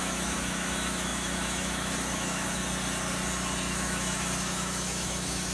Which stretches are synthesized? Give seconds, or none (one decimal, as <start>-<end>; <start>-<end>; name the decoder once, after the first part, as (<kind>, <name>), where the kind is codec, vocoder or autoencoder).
0.0-2.6 (autoencoder, DAC-VAE); 3.7-5.5